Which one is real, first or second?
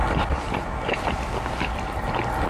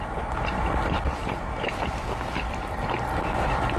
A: first